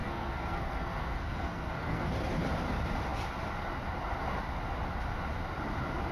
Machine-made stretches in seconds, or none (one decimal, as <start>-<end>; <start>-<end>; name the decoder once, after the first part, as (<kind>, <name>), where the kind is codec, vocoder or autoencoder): 0.0-2.1 (codec, SNAC)